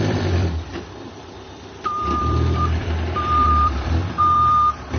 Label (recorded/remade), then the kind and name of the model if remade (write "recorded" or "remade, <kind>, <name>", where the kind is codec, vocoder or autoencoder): remade, vocoder, BigVGAN v2